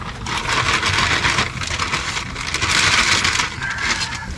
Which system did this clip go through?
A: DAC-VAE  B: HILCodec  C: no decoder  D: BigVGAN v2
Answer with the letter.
C